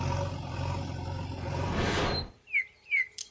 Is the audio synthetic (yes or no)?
yes